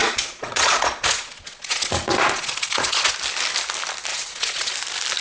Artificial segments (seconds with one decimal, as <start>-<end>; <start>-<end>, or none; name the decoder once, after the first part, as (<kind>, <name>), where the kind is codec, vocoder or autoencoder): 0.0-3.1 (vocoder, Vocos); 4.1-4.7